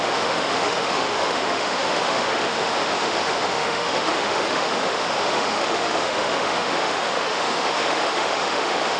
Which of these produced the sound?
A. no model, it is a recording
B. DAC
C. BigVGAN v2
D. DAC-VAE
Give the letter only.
D